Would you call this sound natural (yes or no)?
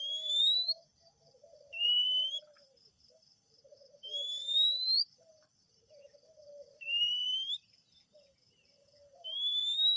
no